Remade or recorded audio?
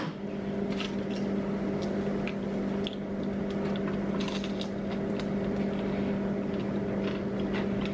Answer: recorded